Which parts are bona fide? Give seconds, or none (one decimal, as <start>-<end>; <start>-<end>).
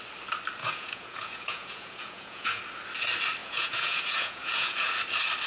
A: 0.0-0.6; 2.6-3.4; 4.9-5.5